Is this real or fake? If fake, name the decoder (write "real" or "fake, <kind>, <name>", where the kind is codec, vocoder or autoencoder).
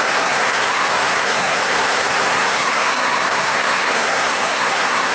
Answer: fake, codec, SNAC